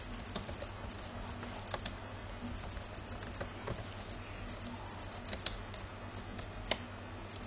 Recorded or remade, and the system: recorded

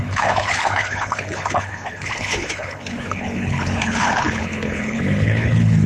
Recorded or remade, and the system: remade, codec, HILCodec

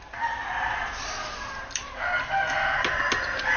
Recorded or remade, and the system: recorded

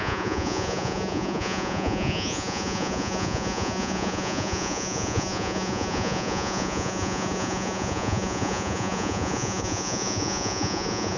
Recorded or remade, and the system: remade, vocoder, Vocos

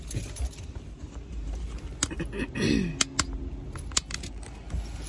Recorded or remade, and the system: recorded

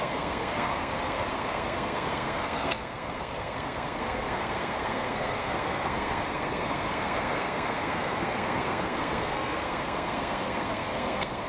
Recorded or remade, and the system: remade, codec, SNAC